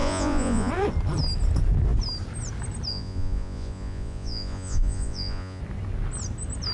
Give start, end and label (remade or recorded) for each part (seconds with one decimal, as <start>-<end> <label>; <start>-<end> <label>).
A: 0.0-0.7 remade; 0.7-2.9 recorded; 2.9-5.6 remade; 5.6-6.7 recorded